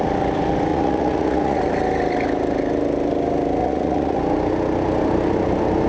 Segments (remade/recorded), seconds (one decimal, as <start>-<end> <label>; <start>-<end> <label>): 0.0-0.7 recorded; 0.7-1.6 remade; 1.6-3.6 recorded; 3.6-4.2 remade; 4.2-5.9 recorded